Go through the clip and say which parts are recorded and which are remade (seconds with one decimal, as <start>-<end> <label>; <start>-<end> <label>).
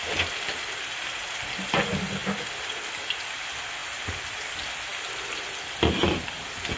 0.0-6.8 recorded